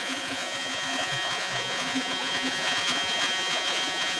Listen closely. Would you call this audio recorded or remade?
remade